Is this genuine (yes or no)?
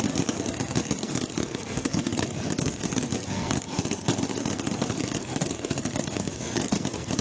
no